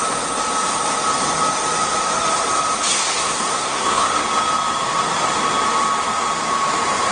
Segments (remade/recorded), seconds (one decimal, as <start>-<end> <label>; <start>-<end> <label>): 0.0-2.9 recorded; 2.9-4.1 remade; 4.1-7.1 recorded

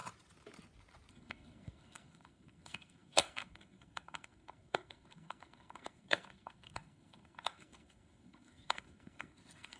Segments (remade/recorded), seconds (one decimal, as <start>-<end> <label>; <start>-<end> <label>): 0.0-1.1 recorded; 1.1-9.8 remade

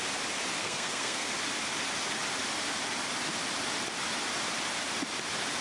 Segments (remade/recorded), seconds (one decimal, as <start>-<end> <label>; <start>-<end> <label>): 0.0-0.6 recorded; 0.6-1.3 remade; 1.3-5.6 recorded